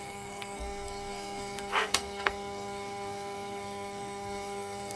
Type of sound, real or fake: fake